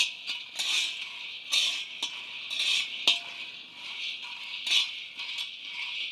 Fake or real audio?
real